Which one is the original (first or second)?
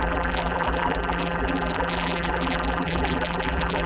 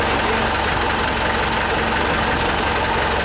second